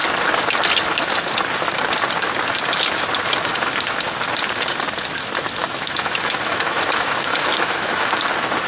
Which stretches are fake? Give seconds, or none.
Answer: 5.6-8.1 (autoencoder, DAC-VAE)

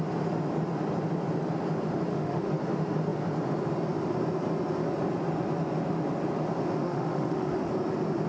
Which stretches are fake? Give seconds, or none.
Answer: 2.1-2.6 (autoencoder, DAC-VAE); 6.8-7.7

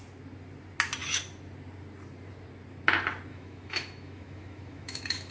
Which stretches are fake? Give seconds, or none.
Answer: 3.3-5.3 (autoencoder, DAC-VAE)

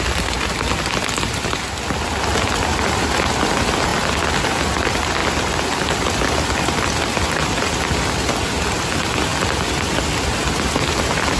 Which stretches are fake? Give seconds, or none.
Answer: none

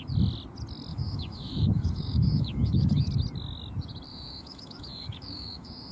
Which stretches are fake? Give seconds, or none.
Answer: 0.9-3.1 (autoencoder, DAC-VAE); 4.1-5.9

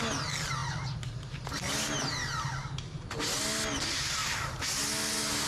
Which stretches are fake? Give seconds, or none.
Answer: none

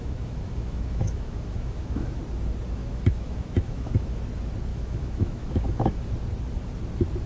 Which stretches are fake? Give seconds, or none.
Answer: 0.0-2.2 (autoencoder, DAC-VAE); 2.8-4.2; 4.7-6.1

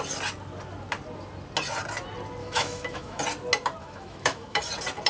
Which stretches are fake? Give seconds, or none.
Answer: 2.4-3.2 (autoencoder, DAC-VAE); 3.8-4.6